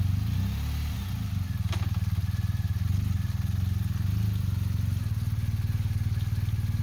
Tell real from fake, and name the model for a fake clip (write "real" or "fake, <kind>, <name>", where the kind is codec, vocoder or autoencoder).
real